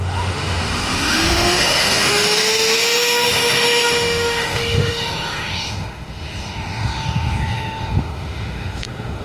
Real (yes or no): no